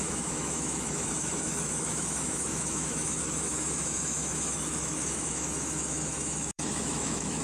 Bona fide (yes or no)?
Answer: no